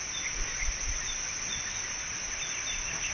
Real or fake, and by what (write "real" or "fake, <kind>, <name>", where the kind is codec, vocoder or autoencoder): real